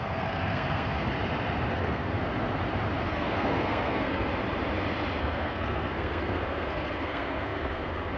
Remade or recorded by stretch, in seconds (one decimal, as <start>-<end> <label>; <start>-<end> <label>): 0.0-1.1 remade; 1.1-1.7 recorded; 1.7-2.2 remade; 2.2-3.1 recorded; 3.1-4.3 remade; 4.3-5.2 recorded; 5.2-8.2 remade